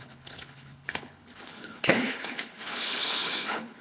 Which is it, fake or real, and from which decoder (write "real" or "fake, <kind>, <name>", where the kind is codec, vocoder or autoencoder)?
fake, codec, HILCodec